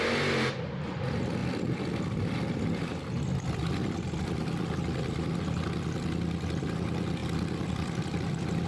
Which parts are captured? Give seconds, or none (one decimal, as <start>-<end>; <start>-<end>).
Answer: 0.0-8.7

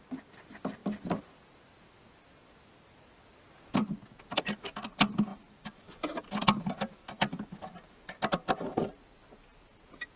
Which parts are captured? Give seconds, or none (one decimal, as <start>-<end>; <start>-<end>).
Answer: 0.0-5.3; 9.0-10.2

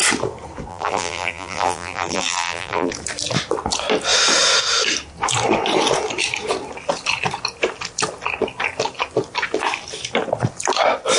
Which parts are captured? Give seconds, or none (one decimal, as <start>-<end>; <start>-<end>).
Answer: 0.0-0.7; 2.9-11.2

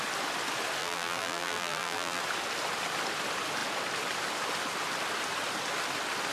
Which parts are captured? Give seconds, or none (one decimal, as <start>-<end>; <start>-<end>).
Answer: 0.0-0.8; 2.2-6.3